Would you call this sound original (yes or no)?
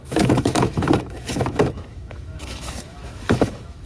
no